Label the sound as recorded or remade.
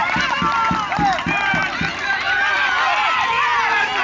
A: remade